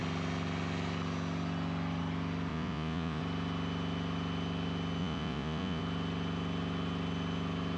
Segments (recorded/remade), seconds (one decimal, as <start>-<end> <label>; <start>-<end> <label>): 0.0-2.5 recorded; 2.5-3.2 remade; 3.2-5.0 recorded; 5.0-5.8 remade; 5.8-7.8 recorded